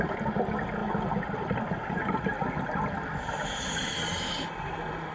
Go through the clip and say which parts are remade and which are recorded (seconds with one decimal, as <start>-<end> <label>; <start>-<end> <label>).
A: 0.0-5.1 recorded